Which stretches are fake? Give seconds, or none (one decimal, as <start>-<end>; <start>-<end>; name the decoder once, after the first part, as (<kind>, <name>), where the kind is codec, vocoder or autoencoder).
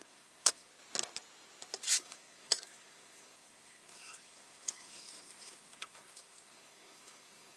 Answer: 0.0-0.7 (codec, SNAC); 2.0-7.6